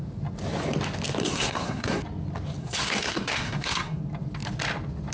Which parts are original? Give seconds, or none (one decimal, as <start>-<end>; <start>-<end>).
0.0-1.2; 2.0-2.6; 4.0-5.1